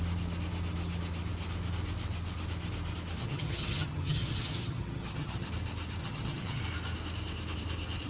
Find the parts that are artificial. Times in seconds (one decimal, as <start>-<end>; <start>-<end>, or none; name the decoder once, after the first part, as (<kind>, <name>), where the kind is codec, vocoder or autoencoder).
3.2-5.5 (vocoder, HiFi-GAN); 6.0-6.6